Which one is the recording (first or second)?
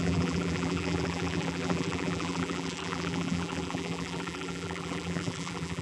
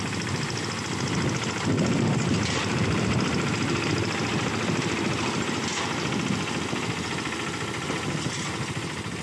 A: second